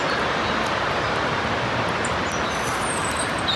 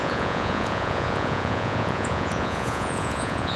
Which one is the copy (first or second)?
second